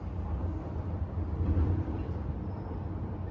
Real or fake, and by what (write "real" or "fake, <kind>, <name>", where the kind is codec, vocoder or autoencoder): fake, vocoder, BigVGAN v2